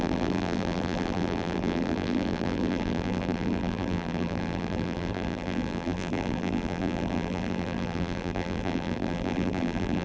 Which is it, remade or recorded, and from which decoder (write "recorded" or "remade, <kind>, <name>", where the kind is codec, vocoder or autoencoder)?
remade, vocoder, BigVGAN v2